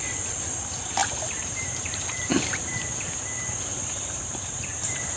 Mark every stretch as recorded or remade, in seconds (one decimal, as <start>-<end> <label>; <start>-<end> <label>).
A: 0.0-1.0 recorded; 1.0-3.1 remade; 3.1-3.7 recorded; 3.7-5.2 remade